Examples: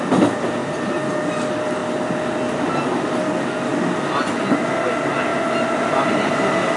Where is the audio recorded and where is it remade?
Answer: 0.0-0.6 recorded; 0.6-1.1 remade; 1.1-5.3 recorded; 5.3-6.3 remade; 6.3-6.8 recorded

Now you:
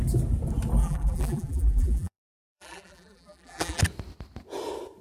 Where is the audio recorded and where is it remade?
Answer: 0.0-0.8 recorded; 0.8-3.8 remade; 3.8-5.0 recorded

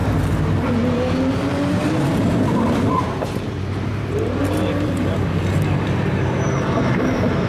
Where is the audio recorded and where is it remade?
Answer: 0.0-7.5 remade

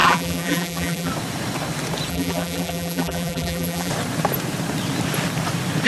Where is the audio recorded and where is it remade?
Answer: 0.0-1.1 remade; 1.1-2.1 recorded; 2.1-3.9 remade; 3.9-5.9 recorded

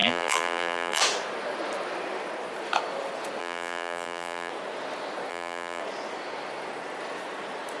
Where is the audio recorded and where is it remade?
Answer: 0.0-1.0 remade; 1.0-3.4 recorded; 3.4-4.5 remade; 4.5-5.3 recorded; 5.3-5.8 remade; 5.8-7.8 recorded

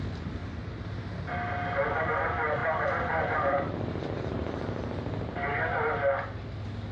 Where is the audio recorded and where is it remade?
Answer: 0.0-0.4 recorded; 0.4-1.3 remade; 1.3-2.6 recorded; 2.6-5.7 remade; 5.7-6.9 recorded